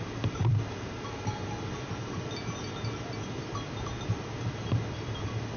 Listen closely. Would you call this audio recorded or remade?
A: recorded